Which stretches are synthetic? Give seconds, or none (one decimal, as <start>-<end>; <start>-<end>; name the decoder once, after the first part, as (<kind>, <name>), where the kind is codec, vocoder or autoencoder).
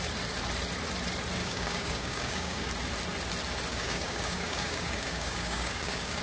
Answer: 1.4-2.7 (codec, DAC); 3.7-6.2